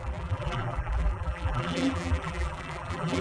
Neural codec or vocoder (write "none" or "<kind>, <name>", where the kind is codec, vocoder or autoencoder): vocoder, BigVGAN v2